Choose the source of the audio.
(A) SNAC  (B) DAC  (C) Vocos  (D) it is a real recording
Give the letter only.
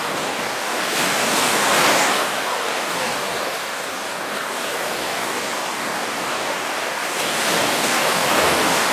B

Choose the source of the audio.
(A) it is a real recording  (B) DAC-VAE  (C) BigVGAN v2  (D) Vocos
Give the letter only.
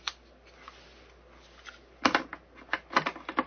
A